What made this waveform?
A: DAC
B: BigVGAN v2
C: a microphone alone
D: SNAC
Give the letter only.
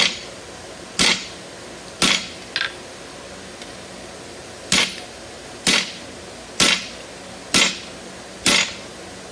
C